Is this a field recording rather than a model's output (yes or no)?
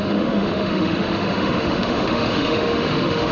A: no